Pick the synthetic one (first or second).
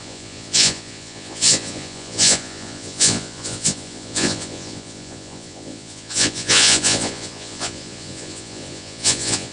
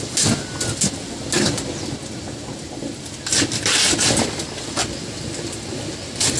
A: first